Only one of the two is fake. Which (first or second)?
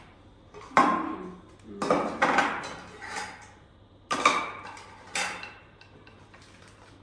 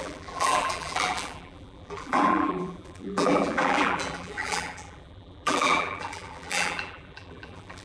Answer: second